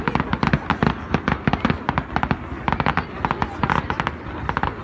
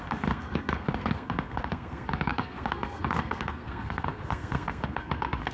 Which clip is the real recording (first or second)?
first